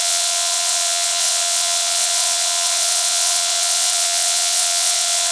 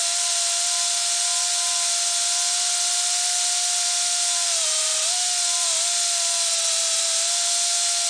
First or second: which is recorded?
second